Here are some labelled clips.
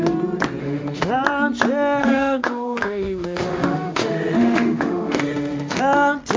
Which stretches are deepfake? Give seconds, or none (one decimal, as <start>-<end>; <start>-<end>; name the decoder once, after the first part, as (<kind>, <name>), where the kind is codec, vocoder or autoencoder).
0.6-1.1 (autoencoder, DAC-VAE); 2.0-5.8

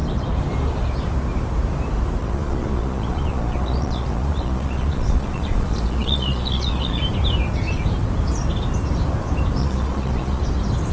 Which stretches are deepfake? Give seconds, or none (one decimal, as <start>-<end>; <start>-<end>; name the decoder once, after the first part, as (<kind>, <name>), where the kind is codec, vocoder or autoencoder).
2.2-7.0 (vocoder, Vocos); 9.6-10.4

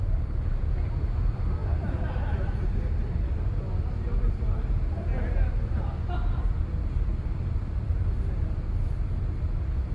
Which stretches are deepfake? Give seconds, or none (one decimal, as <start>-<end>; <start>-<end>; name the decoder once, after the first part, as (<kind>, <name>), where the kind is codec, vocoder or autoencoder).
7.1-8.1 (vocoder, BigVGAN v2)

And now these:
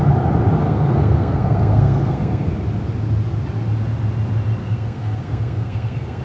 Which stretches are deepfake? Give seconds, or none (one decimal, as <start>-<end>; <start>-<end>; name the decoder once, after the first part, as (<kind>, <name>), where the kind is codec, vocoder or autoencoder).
0.6-2.5 (codec, SNAC); 4.6-6.2

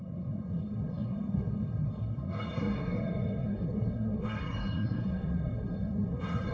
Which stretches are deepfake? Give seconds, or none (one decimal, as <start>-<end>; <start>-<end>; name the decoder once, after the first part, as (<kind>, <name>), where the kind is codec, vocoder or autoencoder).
0.0-6.5 (codec, SNAC)

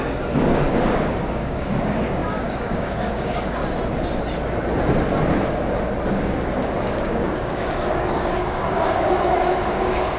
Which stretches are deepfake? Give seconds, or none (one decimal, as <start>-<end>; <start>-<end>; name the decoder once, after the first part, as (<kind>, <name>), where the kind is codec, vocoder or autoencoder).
0.0-3.6 (codec, DAC); 6.1-10.2